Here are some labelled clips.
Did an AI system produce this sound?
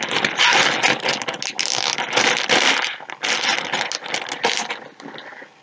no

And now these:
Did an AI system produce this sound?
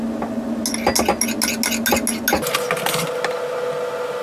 no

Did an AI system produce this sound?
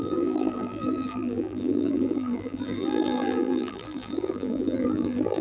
yes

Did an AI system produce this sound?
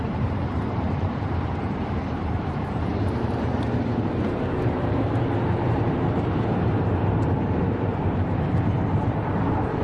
yes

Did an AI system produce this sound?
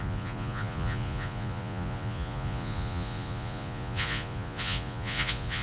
yes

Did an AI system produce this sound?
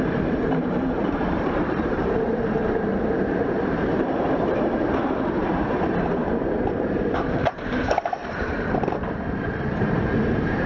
yes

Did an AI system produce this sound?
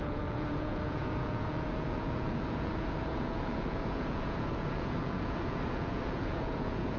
yes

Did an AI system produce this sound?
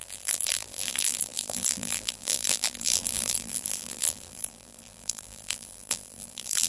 yes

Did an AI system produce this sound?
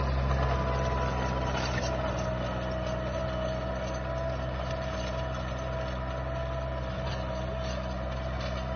no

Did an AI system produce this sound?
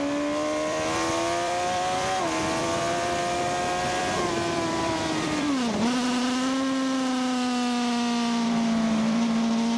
yes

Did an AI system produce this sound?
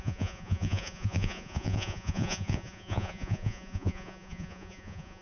yes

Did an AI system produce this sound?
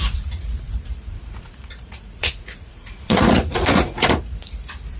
yes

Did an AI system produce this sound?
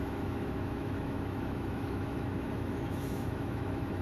yes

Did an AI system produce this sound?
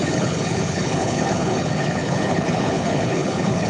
yes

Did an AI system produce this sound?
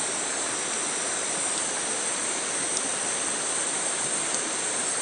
no